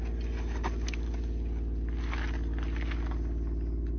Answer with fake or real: real